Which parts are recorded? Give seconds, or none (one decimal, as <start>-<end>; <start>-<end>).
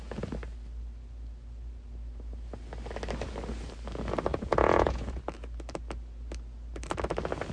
0.0-4.3; 5.2-7.5